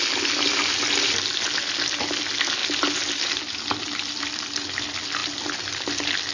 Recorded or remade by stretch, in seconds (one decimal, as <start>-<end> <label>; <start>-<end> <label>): 0.0-6.3 recorded